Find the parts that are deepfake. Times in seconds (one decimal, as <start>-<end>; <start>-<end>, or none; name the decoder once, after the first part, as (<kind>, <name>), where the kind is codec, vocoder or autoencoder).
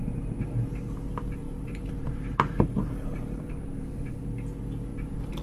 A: 1.4-4.2 (vocoder, BigVGAN v2); 4.9-5.4